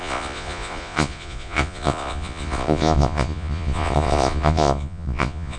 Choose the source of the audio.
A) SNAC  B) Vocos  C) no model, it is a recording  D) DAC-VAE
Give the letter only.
B